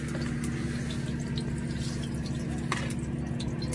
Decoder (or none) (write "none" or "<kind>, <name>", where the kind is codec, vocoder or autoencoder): none